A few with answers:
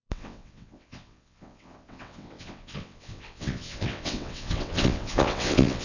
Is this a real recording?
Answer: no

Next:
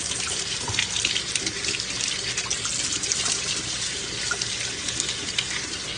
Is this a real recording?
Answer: yes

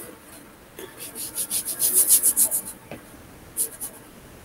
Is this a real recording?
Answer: yes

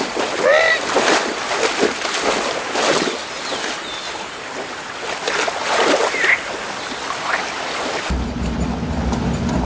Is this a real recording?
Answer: yes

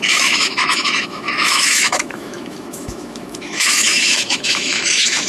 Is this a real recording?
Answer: no